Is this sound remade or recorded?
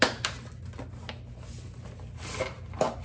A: recorded